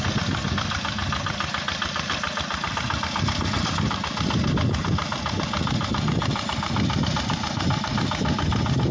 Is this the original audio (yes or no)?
yes